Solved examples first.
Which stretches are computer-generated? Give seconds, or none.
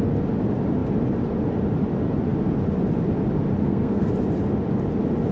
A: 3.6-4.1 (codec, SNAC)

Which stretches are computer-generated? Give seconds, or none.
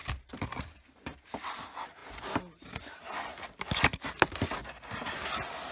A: none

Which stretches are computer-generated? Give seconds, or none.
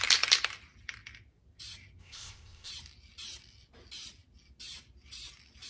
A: 2.0-2.7 (codec, ZipCodec)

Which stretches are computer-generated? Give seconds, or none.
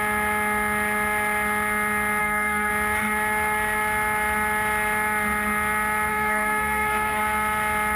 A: 2.2-2.7 (codec, SNAC); 6.1-7.2